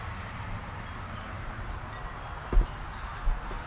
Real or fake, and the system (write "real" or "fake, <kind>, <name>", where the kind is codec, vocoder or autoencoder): real